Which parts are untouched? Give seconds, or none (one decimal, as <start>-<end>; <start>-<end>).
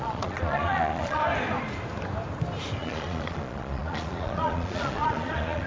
1.2-2.8